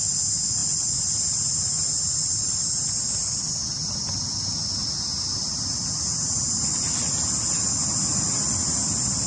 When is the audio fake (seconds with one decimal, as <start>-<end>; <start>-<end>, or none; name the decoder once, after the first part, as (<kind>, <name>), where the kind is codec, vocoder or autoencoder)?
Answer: none